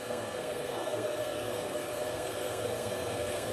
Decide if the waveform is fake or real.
fake